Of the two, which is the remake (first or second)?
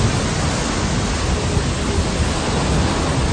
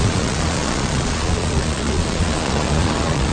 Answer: second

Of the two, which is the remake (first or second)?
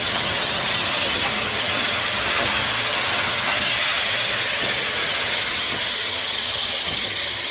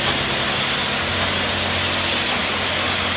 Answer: first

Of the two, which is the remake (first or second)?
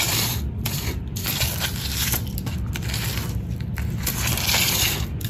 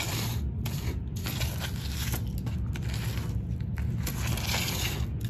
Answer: first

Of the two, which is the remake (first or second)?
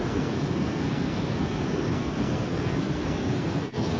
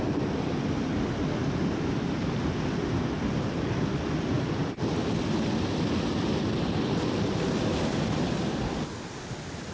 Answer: first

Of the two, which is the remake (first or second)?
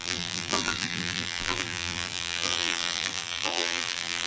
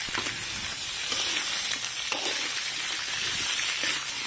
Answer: first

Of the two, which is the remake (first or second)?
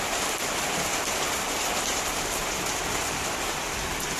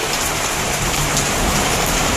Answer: second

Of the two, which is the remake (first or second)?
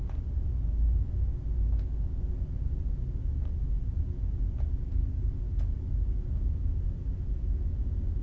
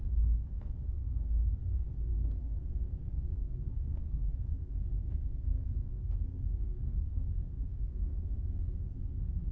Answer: second